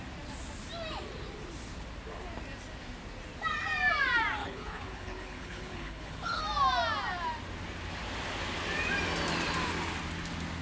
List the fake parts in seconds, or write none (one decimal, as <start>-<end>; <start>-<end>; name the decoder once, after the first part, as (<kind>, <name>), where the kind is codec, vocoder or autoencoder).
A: 4.4-6.4 (codec, HILCodec)